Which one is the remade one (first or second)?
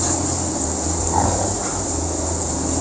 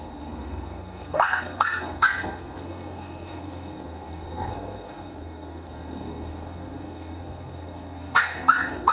second